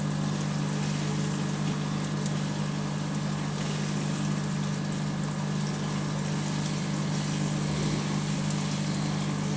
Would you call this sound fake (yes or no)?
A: no